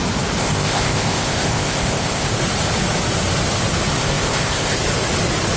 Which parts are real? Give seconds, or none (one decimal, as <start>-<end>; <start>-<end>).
0.0-0.4; 2.4-4.0; 4.8-5.6